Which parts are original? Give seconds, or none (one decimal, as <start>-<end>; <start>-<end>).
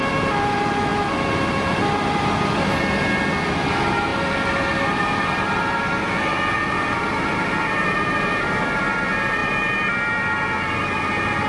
0.0-11.5